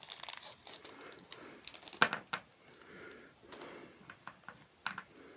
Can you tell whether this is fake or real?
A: real